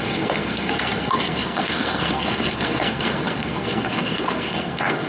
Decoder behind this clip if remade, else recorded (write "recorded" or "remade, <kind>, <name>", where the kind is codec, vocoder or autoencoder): remade, codec, SNAC